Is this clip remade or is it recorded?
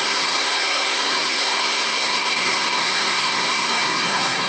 remade